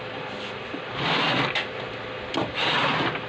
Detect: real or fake real